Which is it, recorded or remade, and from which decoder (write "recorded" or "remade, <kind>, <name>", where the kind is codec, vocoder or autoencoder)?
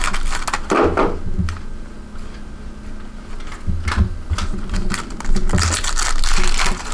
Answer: recorded